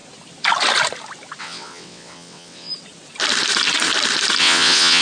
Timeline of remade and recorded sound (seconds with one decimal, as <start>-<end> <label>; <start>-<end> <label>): 0.0-1.4 recorded; 1.4-2.7 remade; 2.7-4.4 recorded; 4.4-5.0 remade